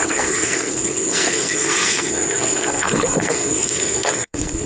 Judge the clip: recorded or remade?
remade